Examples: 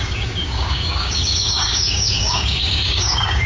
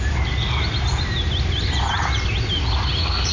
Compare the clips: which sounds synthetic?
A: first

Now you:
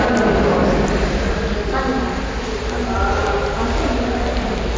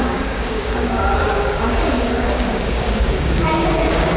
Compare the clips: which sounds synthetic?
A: second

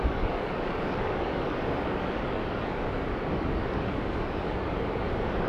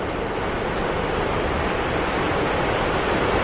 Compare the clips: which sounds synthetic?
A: first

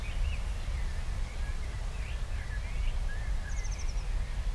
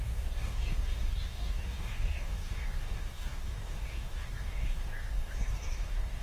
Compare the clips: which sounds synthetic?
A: second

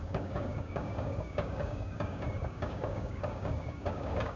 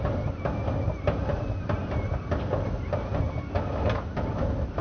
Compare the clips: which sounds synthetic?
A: first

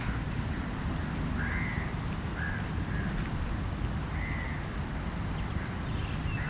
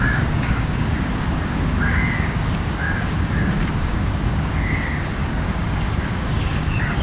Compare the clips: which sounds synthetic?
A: second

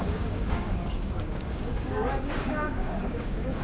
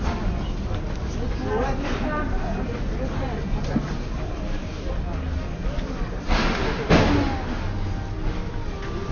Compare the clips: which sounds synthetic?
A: first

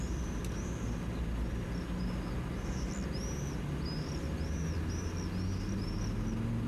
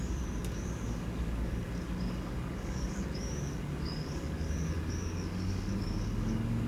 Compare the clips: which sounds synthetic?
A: second